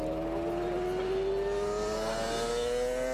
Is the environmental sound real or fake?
real